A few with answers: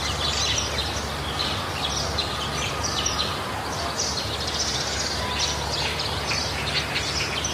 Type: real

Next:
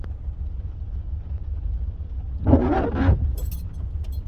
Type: real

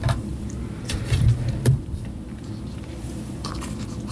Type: fake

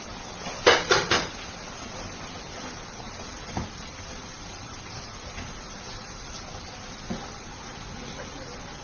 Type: fake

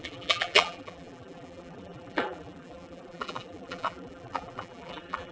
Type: fake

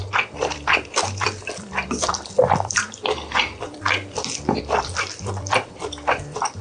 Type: fake